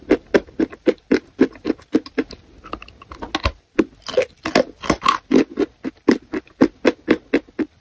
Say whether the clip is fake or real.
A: real